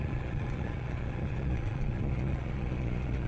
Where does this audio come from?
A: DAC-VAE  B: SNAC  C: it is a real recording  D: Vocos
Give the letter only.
D